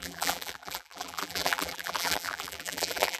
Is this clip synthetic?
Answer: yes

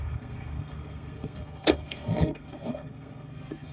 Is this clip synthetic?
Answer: yes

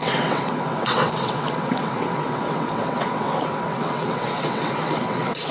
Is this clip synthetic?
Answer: yes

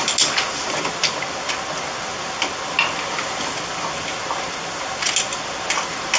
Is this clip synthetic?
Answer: no